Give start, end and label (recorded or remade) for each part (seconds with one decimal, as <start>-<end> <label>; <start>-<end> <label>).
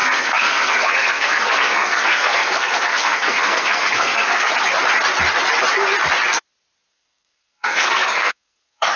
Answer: 0.0-4.5 remade; 4.5-6.9 recorded; 6.9-9.0 remade